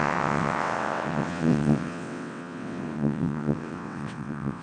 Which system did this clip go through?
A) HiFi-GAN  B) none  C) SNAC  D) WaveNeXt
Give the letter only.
D